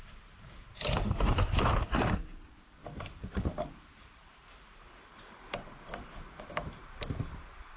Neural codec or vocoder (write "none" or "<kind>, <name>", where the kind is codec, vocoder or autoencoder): vocoder, BigVGAN v2